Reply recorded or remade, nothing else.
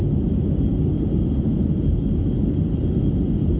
recorded